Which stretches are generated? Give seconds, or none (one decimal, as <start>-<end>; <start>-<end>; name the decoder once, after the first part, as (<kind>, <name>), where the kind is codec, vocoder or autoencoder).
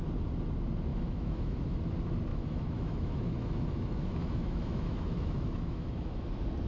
0.9-1.8 (autoencoder, DAC-VAE); 2.3-6.3